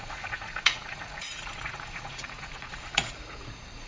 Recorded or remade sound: remade